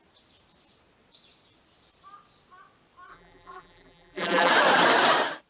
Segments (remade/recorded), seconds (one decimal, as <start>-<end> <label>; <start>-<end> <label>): 0.0-3.1 recorded; 3.1-4.5 remade; 4.5-5.5 recorded